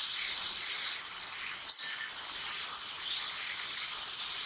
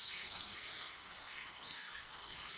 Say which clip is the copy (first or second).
second